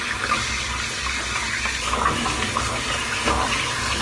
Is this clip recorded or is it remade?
recorded